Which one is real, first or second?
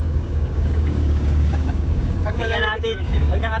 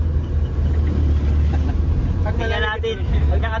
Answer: second